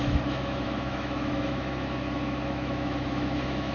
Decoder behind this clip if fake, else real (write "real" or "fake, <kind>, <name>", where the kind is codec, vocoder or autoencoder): fake, autoencoder, DAC-VAE